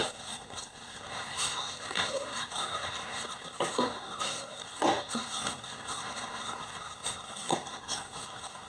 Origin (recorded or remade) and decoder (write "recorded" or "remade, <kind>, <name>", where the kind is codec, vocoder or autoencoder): remade, codec, SNAC